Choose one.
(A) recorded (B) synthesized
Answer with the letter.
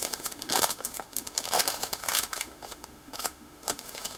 B